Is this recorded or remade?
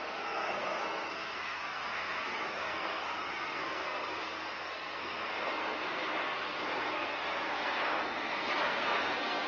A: remade